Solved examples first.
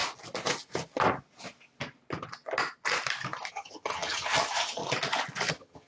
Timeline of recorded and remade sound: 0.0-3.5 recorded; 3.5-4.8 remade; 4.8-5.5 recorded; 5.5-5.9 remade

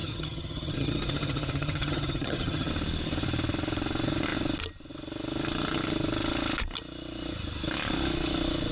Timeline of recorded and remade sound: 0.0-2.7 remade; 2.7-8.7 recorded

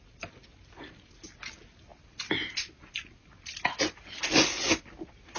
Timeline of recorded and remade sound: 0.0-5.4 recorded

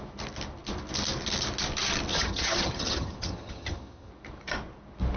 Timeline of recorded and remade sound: 0.0-2.1 recorded; 2.1-4.1 remade; 4.1-5.2 recorded